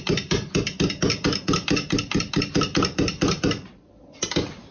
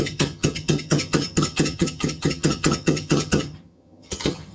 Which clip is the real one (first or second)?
first